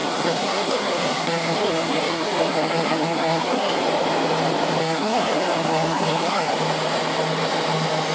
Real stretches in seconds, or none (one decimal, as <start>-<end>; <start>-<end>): 3.8-4.8; 6.5-8.1